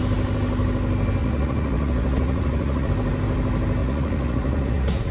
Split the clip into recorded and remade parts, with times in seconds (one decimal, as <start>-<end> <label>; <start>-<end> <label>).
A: 0.0-1.2 recorded; 1.2-2.9 remade; 2.9-3.8 recorded; 3.8-5.1 remade